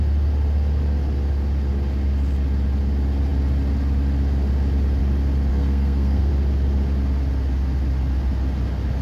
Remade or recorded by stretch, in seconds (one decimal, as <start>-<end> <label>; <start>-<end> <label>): 0.0-5.5 recorded; 5.5-6.3 remade; 6.3-9.0 recorded